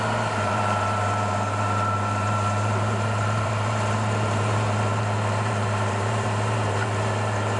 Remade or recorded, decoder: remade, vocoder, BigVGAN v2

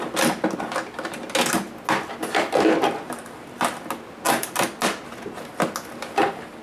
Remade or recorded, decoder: recorded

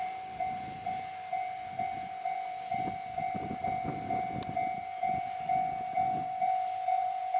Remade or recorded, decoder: remade, vocoder, BigVGAN v2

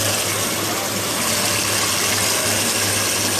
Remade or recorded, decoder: recorded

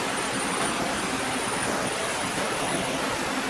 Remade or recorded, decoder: recorded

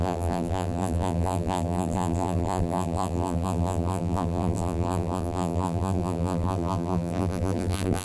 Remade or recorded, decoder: remade, vocoder, BigVGAN v2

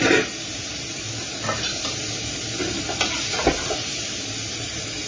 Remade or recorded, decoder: remade, vocoder, BigVGAN v2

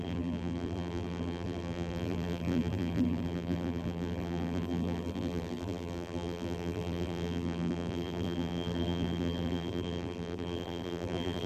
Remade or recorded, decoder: remade, vocoder, BigVGAN v2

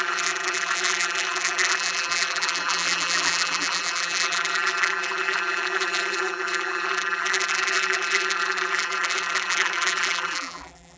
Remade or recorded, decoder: remade, vocoder, BigVGAN v2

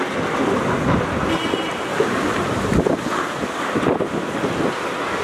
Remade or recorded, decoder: recorded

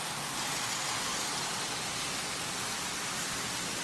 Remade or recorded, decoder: recorded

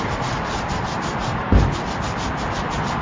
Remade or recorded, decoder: recorded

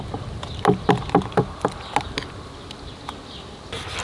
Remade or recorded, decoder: recorded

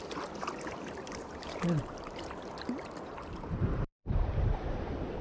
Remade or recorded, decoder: remade, vocoder, BigVGAN v2